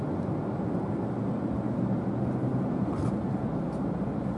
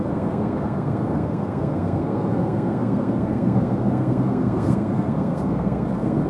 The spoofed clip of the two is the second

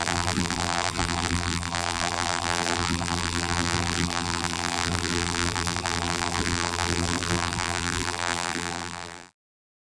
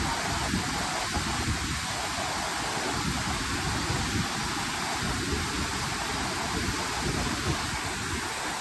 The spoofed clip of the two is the first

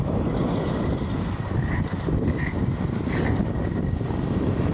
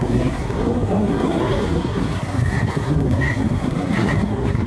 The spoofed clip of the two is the second